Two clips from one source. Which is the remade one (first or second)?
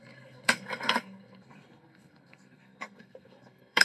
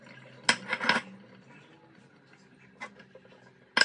first